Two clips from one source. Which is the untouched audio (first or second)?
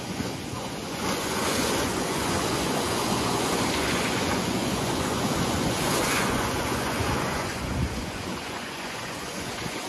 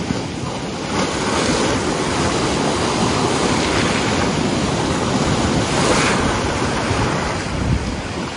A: second